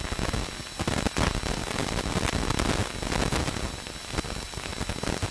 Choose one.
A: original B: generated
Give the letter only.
A